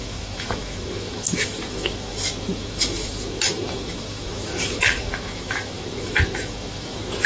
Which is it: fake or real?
fake